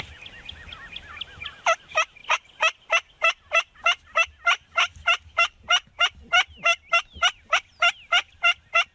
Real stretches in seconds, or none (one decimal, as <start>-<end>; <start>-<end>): 0.0-8.9